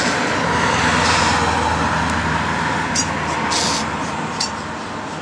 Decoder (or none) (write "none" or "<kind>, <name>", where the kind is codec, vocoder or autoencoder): none